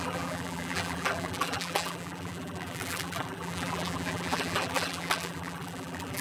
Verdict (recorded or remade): remade